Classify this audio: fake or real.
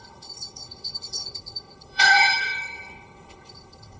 fake